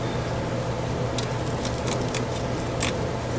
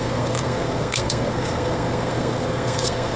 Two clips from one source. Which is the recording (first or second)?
first